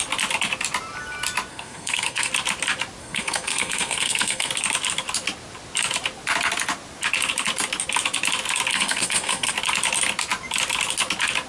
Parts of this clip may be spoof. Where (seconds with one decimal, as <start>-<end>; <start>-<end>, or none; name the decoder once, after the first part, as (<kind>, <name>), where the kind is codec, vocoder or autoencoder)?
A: 1.5-2.3 (codec, SNAC); 3.0-4.5; 8.7-9.5